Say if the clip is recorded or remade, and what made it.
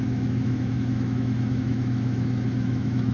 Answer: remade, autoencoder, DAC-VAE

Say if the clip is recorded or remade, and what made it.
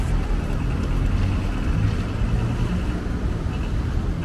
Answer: recorded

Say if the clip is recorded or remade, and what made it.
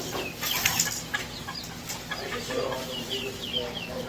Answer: recorded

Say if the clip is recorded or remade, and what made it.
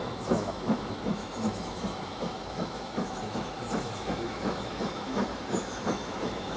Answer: remade, autoencoder, DAC-VAE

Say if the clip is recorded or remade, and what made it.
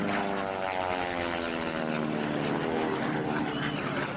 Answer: recorded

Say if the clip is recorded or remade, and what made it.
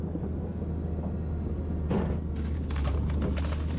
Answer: recorded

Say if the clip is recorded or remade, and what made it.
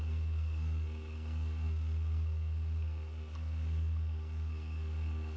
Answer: remade, codec, SNAC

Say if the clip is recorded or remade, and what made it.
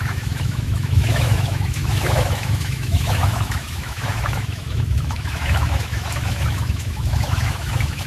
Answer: remade, autoencoder, DAC-VAE